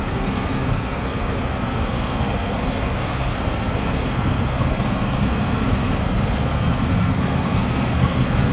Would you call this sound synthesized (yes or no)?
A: yes